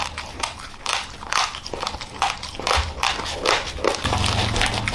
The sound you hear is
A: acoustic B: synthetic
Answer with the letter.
A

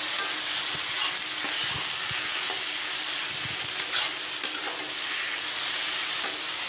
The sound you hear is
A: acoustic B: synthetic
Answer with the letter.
A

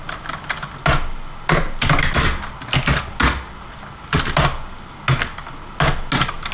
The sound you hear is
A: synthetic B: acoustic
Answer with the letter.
B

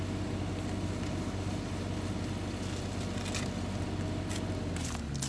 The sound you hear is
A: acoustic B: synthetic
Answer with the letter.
A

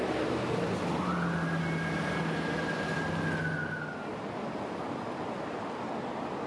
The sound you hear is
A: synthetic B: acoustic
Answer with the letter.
B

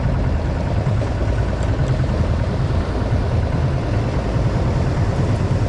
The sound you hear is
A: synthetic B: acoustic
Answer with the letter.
B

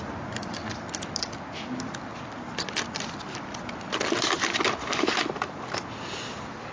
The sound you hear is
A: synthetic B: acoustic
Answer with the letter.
B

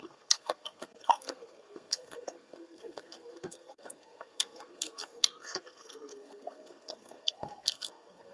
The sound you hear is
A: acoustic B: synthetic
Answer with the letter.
B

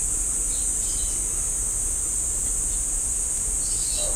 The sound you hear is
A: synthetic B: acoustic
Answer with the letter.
B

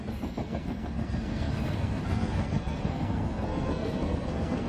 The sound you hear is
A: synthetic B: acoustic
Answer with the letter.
A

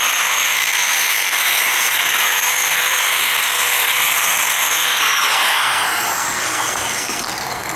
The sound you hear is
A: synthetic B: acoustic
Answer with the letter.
A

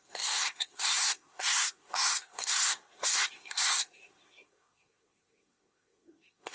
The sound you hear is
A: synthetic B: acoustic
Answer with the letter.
A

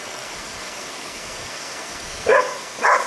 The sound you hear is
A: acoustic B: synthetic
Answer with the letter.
B